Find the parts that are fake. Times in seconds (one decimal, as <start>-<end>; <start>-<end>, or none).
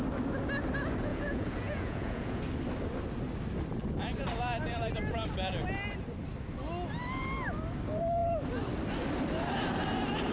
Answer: 1.1-2.4